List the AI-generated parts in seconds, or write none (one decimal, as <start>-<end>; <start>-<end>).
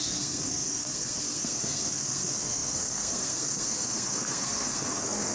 0.0-5.3